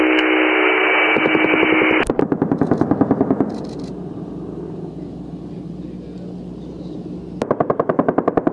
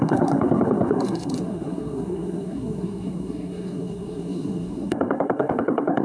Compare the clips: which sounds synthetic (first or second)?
second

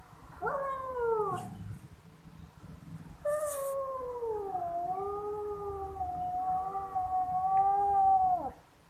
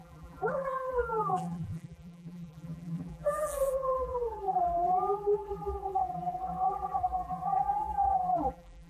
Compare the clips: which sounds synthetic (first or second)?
second